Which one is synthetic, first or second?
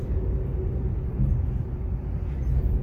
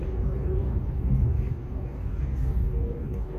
second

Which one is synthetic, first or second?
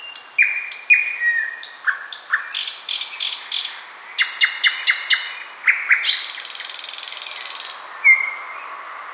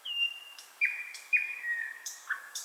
second